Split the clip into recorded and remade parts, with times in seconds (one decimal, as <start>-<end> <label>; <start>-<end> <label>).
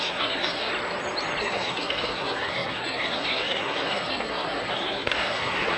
0.0-0.7 remade; 0.7-1.4 recorded; 1.4-5.8 remade